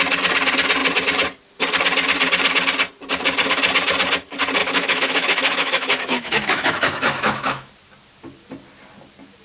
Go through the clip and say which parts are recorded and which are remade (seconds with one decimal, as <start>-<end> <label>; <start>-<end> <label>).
0.0-4.6 recorded; 4.6-7.7 remade; 7.7-9.4 recorded